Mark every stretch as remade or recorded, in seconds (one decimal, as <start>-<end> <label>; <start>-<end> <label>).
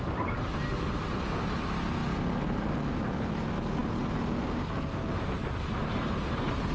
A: 0.0-6.7 recorded